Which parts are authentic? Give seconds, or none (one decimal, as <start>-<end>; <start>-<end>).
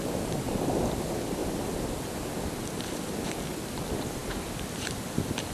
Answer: 0.0-5.5